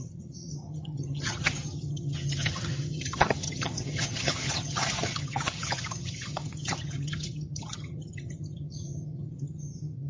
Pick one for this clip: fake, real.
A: fake